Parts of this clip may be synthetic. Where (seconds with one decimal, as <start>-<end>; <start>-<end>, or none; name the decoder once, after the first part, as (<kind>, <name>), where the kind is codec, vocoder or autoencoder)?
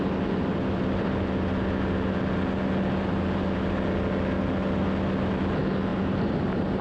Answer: 5.9-6.8 (vocoder, BigVGAN v2)